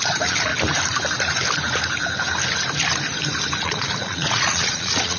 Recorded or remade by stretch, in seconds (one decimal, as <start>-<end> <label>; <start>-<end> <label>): 0.0-0.5 remade; 0.5-3.6 recorded; 3.6-5.2 remade